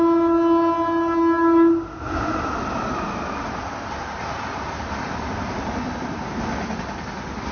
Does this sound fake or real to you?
real